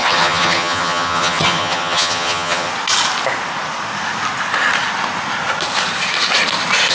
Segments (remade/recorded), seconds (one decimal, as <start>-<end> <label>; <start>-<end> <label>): 0.0-2.7 remade; 2.7-6.9 recorded